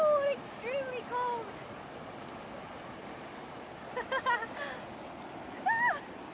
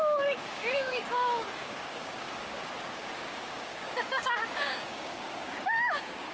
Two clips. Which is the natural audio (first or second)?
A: first